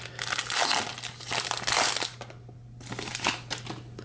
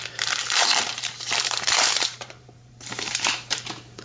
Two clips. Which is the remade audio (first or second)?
second